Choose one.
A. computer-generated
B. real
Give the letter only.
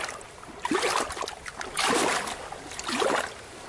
B